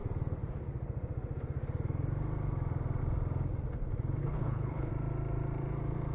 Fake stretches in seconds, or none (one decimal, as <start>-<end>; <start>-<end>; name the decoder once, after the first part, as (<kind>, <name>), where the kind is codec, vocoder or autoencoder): 4.2-4.9 (codec, HILCodec)